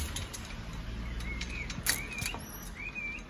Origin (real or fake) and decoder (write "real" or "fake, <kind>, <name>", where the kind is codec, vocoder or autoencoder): real